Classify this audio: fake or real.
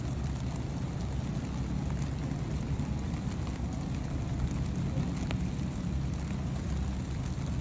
real